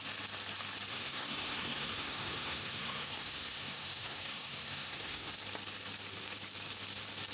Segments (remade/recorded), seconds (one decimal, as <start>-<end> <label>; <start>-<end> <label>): 0.0-0.9 recorded; 0.9-5.3 remade; 5.3-7.3 recorded